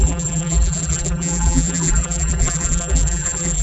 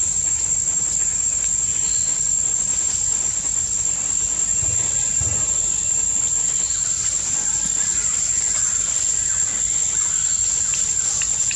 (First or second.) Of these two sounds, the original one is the second